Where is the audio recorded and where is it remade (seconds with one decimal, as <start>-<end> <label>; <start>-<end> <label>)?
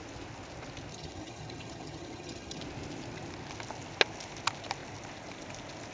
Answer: 0.0-0.9 recorded; 0.9-2.6 remade; 2.6-5.9 recorded